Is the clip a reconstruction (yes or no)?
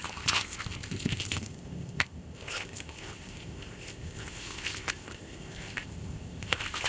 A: yes